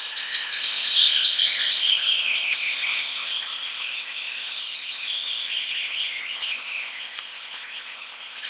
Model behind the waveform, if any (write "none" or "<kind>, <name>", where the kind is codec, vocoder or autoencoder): codec, ZipCodec